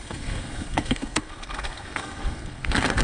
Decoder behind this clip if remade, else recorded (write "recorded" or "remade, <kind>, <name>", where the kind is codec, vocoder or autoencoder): remade, codec, SNAC